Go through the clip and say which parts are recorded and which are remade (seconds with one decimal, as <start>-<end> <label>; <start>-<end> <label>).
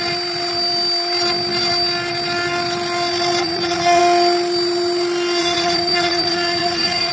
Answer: 0.0-3.4 recorded; 3.4-4.0 remade; 4.0-5.4 recorded; 5.4-7.1 remade